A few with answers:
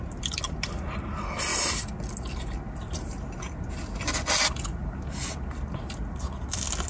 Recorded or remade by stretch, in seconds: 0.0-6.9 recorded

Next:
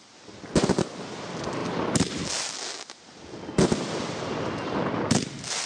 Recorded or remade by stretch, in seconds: 0.0-5.7 recorded